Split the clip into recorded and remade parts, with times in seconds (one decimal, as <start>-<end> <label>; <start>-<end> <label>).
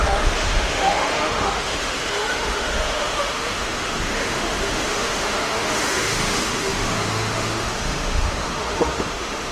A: 0.0-9.5 remade